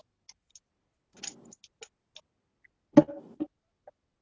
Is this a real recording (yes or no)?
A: yes